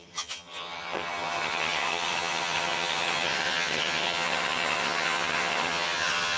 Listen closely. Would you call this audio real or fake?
fake